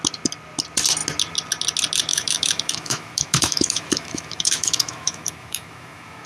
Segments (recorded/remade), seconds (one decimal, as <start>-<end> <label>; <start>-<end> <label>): 0.0-2.1 recorded; 2.1-6.3 remade